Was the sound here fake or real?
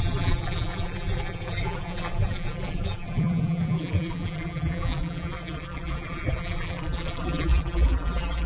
fake